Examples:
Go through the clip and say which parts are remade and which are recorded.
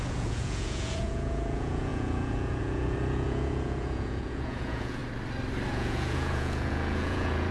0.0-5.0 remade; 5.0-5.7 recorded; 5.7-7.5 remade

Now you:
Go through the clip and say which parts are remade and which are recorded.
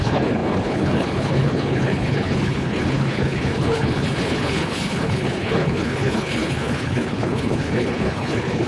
0.0-8.7 remade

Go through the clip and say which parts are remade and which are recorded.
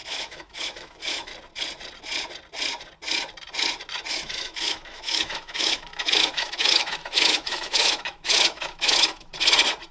0.0-1.3 remade; 1.3-4.1 recorded; 4.1-9.3 remade; 9.3-9.9 recorded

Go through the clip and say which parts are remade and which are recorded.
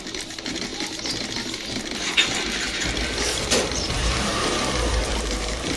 0.0-0.7 remade; 0.7-3.4 recorded; 3.4-4.3 remade; 4.3-4.9 recorded; 4.9-5.8 remade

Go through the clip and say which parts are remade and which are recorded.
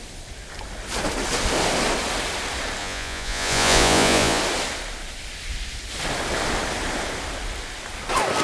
0.0-2.8 recorded; 2.8-4.4 remade; 4.4-8.4 recorded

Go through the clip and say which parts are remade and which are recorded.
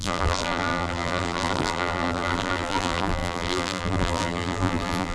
0.0-5.1 remade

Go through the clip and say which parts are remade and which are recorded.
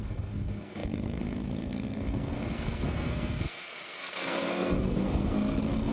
0.0-5.9 remade